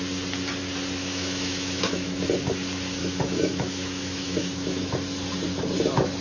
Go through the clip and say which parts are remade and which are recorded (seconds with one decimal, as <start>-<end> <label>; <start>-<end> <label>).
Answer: 0.0-1.0 recorded; 1.0-2.2 remade; 2.2-3.0 recorded; 3.0-4.9 remade; 4.9-6.2 recorded